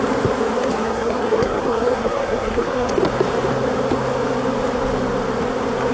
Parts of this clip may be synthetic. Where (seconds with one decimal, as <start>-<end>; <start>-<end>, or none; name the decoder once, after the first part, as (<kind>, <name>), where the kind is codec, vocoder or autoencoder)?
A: 0.7-2.9 (codec, SNAC)